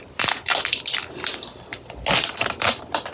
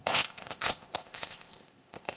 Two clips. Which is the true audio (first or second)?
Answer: first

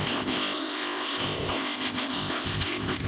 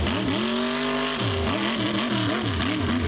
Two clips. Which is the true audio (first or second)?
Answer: second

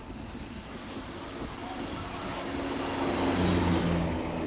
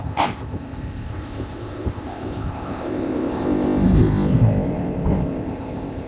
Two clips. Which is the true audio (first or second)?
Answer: first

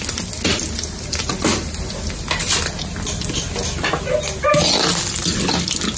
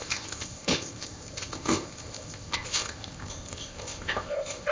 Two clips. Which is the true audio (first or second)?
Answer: first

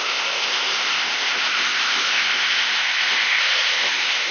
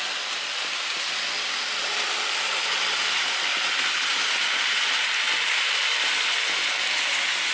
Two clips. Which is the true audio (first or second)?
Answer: second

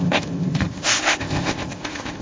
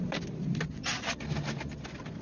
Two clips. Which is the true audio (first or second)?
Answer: second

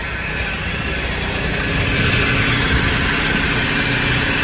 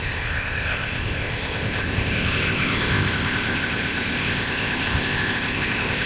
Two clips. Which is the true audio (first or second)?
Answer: first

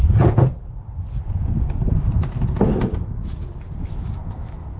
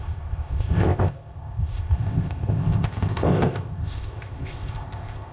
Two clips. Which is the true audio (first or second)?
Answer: first